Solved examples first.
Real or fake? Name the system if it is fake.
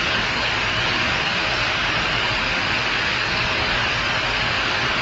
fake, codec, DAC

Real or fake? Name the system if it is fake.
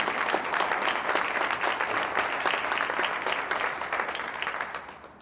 real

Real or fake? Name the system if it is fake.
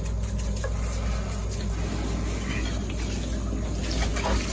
real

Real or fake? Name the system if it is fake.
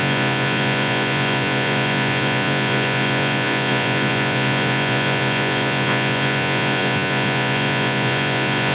fake, vocoder, Vocos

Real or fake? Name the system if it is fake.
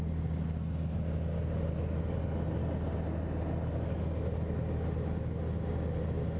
real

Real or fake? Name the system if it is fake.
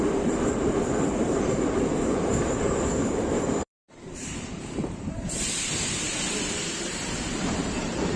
fake, vocoder, BigVGAN v2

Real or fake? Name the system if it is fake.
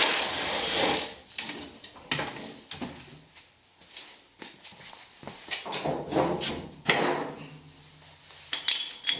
real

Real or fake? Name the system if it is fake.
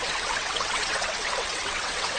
fake, vocoder, WaveNeXt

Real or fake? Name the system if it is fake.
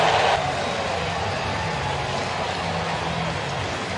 real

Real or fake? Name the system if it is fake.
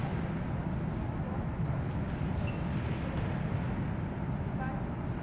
real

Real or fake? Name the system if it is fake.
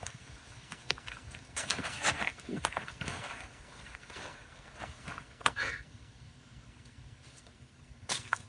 fake, codec, SNAC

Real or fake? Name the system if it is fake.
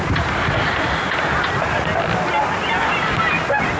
real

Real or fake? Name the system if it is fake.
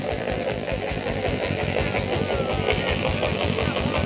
fake, vocoder, BigVGAN v2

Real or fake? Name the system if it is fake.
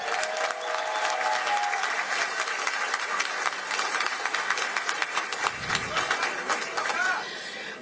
real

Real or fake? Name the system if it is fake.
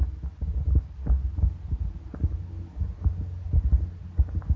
real